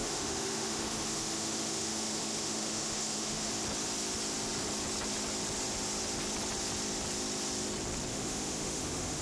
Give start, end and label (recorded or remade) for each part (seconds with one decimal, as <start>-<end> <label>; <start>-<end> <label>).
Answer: 0.0-3.5 remade; 3.5-8.1 recorded; 8.1-9.2 remade